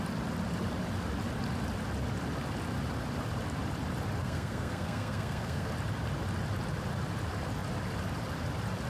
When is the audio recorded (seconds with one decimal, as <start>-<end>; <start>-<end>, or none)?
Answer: 0.0-4.2; 5.7-8.9